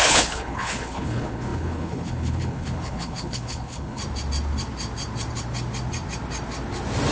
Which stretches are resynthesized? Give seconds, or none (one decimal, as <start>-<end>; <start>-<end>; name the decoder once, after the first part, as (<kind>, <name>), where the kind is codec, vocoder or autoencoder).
0.0-4.0 (codec, HILCodec)